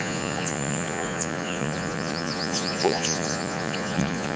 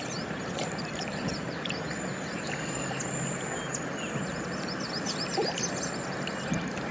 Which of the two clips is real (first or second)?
second